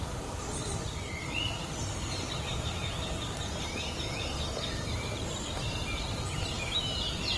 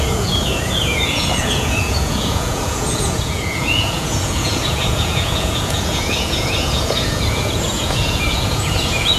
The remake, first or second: second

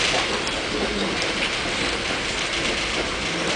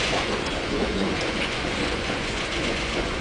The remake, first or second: second